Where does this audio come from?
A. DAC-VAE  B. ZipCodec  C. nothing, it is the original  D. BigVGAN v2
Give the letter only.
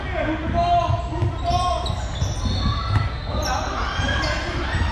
C